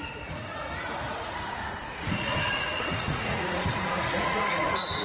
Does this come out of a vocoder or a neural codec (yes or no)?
yes